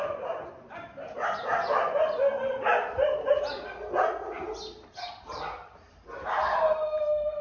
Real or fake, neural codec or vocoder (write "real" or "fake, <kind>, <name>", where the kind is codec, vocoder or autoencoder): real